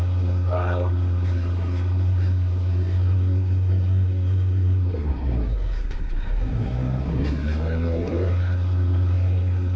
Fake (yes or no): yes